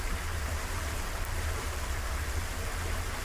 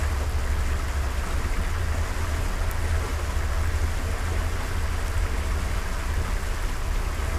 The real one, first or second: second